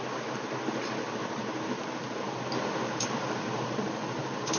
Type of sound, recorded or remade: recorded